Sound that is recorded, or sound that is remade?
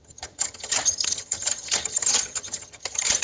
remade